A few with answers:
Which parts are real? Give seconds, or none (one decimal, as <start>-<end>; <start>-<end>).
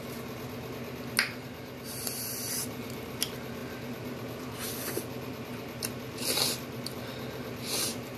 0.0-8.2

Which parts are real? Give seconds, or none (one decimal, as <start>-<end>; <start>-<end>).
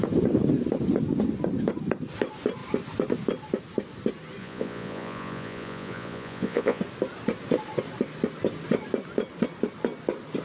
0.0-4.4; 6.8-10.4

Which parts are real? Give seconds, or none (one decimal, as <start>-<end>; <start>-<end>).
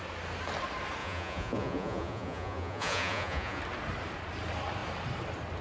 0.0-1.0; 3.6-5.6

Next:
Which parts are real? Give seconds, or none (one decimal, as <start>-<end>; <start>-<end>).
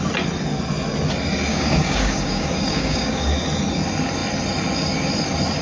0.0-1.5; 3.3-5.6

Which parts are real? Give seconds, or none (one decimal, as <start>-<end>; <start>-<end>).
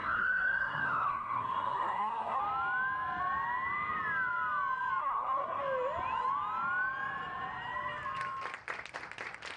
2.4-5.0; 5.6-9.6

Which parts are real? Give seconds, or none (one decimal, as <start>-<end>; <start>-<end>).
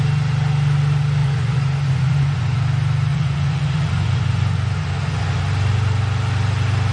0.0-1.2; 2.6-3.1; 5.4-6.9